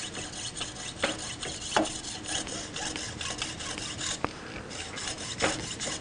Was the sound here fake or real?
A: real